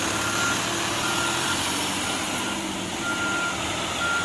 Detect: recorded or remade recorded